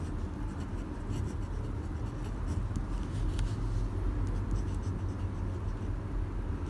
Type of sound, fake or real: real